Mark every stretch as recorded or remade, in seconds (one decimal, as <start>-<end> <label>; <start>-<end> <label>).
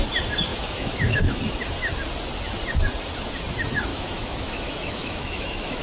0.0-0.5 recorded; 0.5-1.4 remade; 1.4-3.9 recorded; 3.9-5.8 remade